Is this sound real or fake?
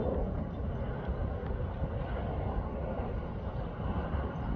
real